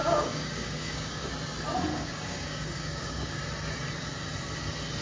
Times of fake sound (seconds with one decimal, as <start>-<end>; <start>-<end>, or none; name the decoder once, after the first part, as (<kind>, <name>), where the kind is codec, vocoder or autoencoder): 0.0-1.3 (codec, DAC); 1.9-3.4